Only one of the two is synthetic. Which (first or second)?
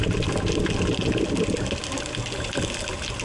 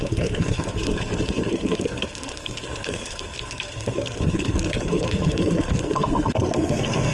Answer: second